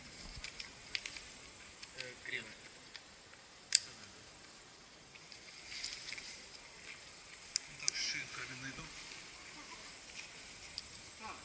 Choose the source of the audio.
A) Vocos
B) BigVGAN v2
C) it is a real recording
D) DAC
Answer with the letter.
C